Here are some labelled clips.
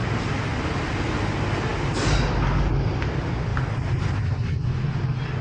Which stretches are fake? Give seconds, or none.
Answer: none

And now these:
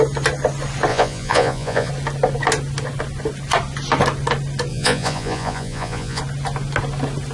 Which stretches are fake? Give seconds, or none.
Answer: 0.9-1.9; 4.7-6.2

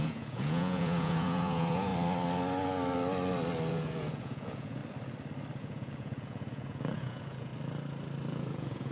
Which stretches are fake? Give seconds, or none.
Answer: 0.0-1.9; 3.7-4.8; 5.6-7.5; 8.3-8.9

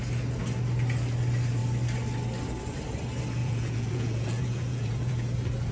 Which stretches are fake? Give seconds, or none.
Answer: 3.4-5.1

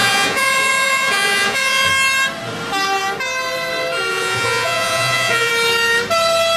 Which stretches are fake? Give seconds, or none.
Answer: 0.0-1.9; 4.1-5.5